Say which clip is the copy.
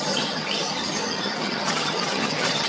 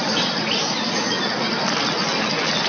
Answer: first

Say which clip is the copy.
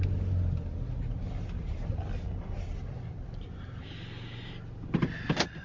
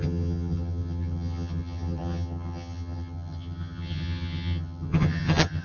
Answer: second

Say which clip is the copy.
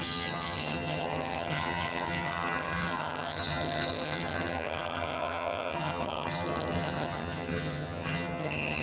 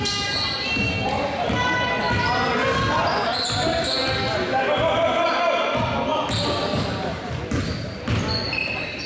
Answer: first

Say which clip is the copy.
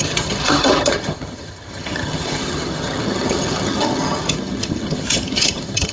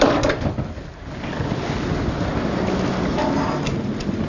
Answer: first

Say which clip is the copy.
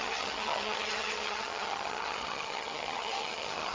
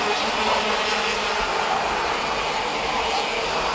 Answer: first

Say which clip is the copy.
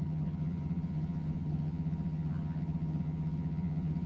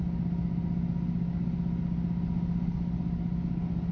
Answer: first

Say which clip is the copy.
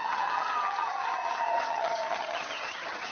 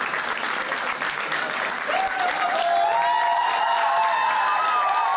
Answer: first